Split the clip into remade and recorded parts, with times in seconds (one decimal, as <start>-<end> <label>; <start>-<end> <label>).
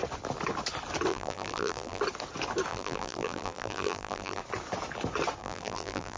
0.0-1.1 recorded; 1.1-2.0 remade; 2.0-2.7 recorded; 2.7-4.4 remade; 4.4-5.4 recorded; 5.4-6.2 remade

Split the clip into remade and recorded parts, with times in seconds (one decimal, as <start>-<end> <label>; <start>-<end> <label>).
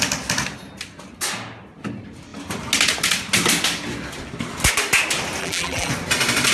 0.0-5.4 recorded; 5.4-5.9 remade; 5.9-6.5 recorded